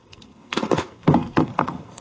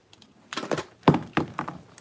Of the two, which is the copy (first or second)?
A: first